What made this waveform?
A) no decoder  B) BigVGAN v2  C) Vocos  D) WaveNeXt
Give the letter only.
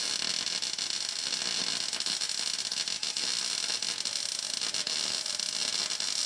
A